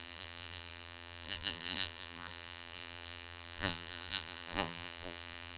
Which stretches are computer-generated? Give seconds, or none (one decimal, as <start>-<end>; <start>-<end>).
0.0-5.6